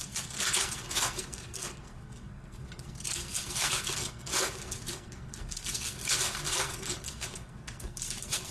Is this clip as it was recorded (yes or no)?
no